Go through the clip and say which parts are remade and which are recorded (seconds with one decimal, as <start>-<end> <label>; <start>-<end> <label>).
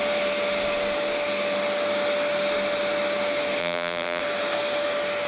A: 0.0-3.6 recorded; 3.6-4.2 remade; 4.2-5.3 recorded